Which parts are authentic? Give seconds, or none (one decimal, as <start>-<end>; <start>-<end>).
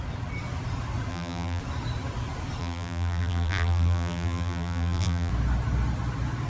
0.0-1.1; 1.6-2.6; 5.3-6.5